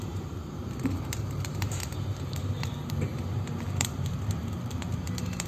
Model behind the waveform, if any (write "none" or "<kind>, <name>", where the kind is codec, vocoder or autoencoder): vocoder, BigVGAN v2